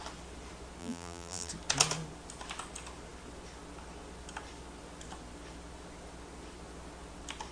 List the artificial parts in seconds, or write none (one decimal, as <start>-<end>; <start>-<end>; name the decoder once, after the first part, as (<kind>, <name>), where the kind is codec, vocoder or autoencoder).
0.8-1.5 (vocoder, BigVGAN v2)